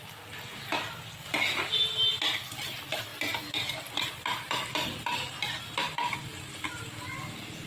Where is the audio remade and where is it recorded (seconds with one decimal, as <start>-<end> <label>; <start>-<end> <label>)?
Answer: 0.0-7.7 recorded